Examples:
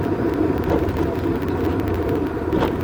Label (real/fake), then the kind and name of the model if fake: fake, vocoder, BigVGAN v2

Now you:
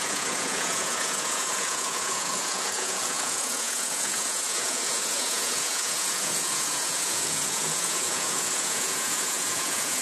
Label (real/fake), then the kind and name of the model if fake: fake, vocoder, Vocos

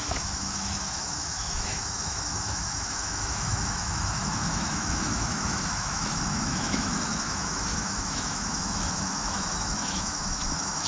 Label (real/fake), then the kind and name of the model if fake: fake, autoencoder, DAC-VAE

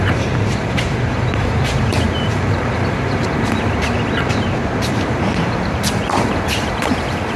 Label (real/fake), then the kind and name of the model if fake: fake, vocoder, BigVGAN v2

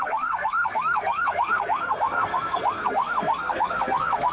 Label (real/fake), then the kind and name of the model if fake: fake, codec, SNAC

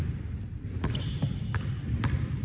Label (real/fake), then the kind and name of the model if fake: real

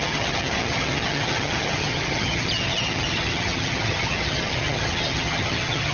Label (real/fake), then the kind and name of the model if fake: fake, vocoder, HiFi-GAN